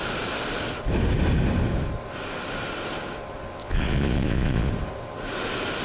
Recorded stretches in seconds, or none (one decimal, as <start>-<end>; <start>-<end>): 0.0-3.6; 4.7-5.8